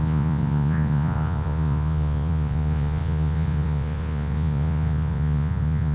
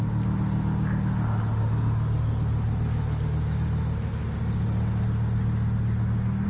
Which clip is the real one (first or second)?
second